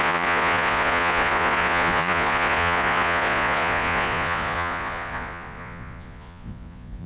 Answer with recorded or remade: remade